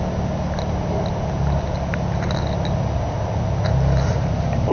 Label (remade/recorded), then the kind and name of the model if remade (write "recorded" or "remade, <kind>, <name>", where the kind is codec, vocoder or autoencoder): recorded